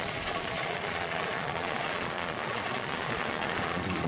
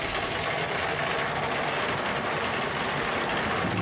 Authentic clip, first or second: second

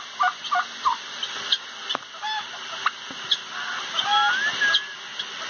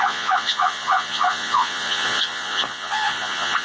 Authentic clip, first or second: first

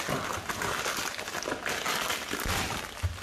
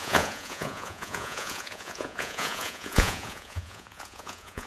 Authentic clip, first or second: first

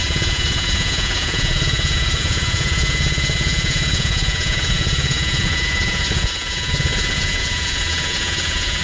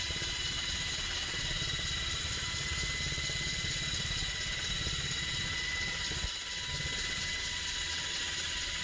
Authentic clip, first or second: second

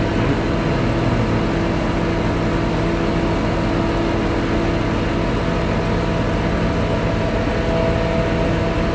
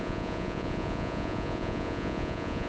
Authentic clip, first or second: first